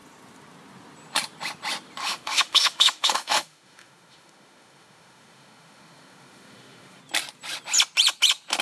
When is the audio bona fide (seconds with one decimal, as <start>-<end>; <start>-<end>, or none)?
0.0-2.0; 7.0-8.6